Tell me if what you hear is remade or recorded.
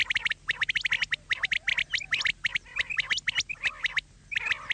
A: recorded